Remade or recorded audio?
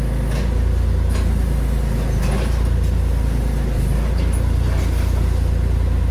recorded